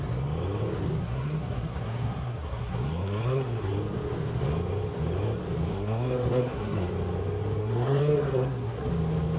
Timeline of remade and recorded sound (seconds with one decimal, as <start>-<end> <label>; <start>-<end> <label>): 0.0-1.0 recorded; 1.0-3.7 remade; 3.7-5.7 recorded; 5.7-6.9 remade; 6.9-7.6 recorded; 7.6-8.9 remade; 8.9-9.4 recorded